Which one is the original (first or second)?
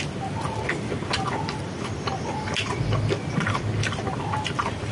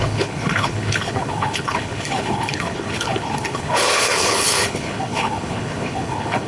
first